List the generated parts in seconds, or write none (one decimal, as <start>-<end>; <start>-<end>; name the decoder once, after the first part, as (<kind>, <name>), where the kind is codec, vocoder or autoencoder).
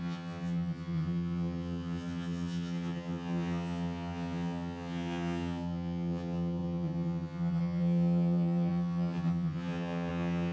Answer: 0.0-10.5 (vocoder, HiFi-GAN)